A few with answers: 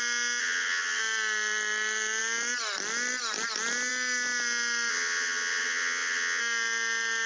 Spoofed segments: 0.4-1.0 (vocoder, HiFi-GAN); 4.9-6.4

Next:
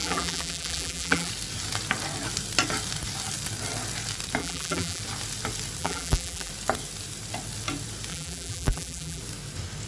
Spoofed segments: 0.0-1.3 (vocoder, BigVGAN v2); 4.4-5.0; 5.8-6.5; 8.1-9.2